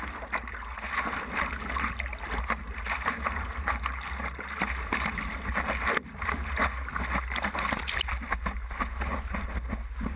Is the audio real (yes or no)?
yes